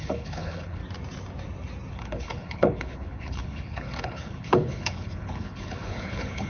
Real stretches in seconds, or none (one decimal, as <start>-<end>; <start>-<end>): 0.8-1.9